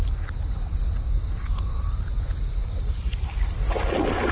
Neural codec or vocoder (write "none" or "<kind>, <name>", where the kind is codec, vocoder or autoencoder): none